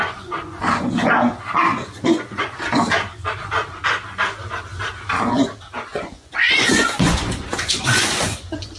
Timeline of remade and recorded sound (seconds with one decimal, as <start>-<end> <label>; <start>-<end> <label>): 0.0-0.9 remade; 0.9-1.7 recorded; 1.7-2.6 remade; 2.6-5.9 recorded; 5.9-8.8 remade